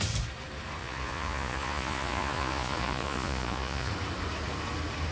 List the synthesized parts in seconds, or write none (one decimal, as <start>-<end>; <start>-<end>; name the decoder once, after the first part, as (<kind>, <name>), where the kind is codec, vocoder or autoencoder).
0.8-3.9 (vocoder, Vocos)